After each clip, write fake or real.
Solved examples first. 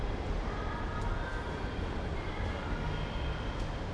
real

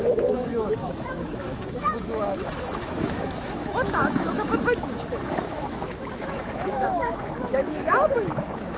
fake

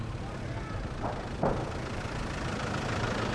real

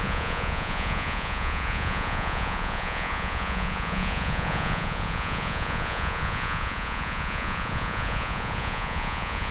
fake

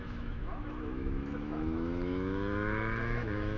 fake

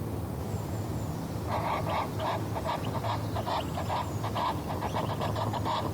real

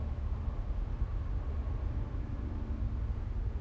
real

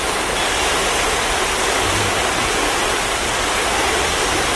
real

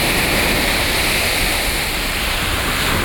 real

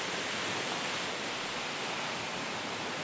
real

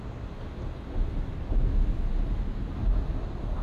real